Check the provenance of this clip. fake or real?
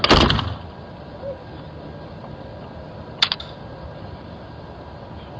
real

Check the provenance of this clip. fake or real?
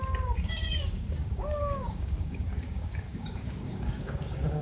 fake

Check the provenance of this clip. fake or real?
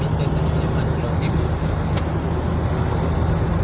real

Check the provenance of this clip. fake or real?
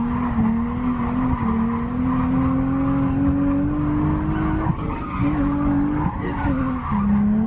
real